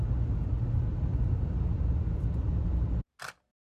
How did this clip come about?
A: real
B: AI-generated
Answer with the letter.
A